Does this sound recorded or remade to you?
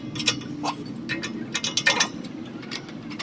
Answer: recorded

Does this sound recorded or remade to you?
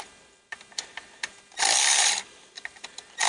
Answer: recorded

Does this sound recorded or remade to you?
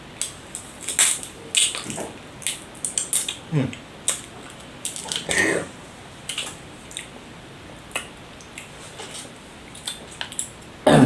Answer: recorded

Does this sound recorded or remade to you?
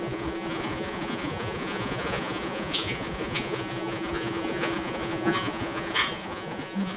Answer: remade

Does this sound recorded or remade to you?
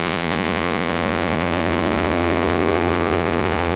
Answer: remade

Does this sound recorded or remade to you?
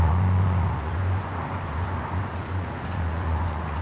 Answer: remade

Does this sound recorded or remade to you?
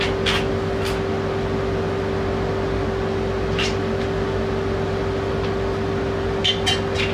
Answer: recorded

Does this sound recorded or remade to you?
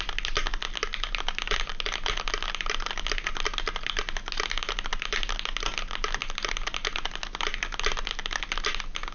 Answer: recorded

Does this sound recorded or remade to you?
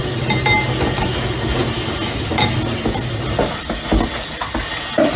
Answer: recorded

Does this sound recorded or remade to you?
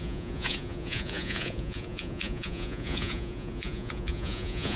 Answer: remade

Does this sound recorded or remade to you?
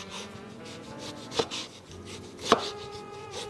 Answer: remade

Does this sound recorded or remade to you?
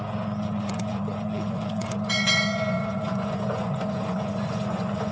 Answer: remade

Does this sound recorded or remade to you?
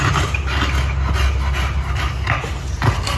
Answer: recorded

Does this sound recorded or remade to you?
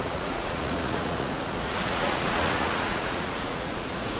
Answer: remade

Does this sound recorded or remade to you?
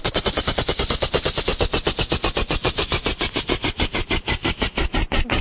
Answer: recorded